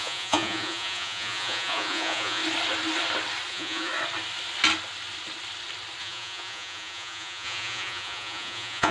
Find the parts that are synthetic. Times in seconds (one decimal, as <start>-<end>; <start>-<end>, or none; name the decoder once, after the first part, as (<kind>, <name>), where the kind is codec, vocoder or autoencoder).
0.0-2.4 (vocoder, Vocos); 3.5-3.9; 6.0-8.9